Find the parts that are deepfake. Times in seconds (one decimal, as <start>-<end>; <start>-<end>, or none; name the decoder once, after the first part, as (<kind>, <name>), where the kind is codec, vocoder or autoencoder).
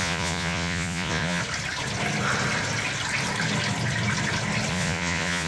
0.0-1.4 (vocoder, Vocos); 4.7-5.5